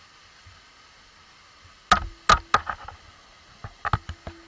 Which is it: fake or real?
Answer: real